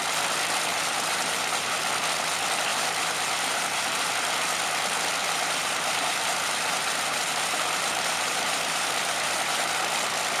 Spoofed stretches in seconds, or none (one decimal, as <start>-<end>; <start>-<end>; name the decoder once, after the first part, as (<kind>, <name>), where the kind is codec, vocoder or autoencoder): 0.7-1.8 (vocoder, BigVGAN v2); 2.7-4.1; 5.2-9.8